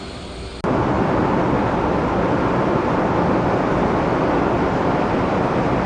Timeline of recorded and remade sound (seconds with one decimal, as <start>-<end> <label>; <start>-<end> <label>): 0.0-5.9 recorded